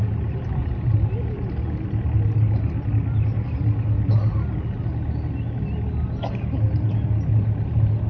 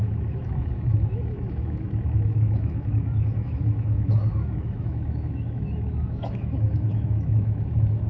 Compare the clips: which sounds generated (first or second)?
second